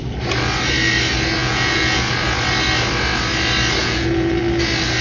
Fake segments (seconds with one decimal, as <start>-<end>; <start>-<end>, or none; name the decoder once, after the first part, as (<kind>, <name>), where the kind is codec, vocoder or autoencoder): 1.4-2.1 (vocoder, Vocos); 3.8-4.4